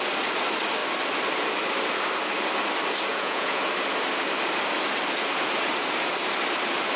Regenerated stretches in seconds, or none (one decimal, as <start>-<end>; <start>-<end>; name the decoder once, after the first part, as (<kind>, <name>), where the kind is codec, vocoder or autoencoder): 3.1-3.6 (vocoder, Vocos)